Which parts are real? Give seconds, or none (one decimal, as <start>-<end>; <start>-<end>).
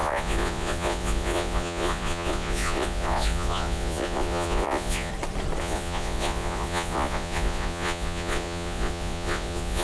5.1-5.6